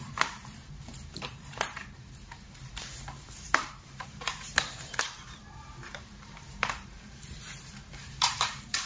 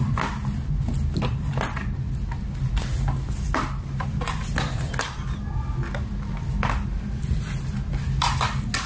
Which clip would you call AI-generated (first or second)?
first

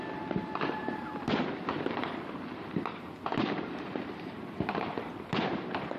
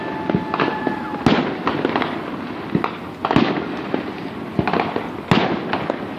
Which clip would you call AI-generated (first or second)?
first